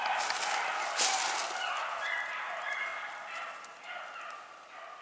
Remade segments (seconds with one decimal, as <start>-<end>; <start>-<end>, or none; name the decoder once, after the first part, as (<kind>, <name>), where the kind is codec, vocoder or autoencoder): none